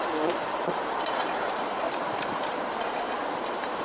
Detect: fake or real fake